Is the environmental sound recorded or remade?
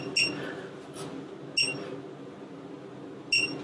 recorded